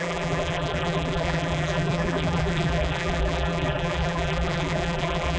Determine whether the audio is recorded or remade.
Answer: remade